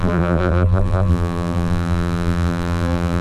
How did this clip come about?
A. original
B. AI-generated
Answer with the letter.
B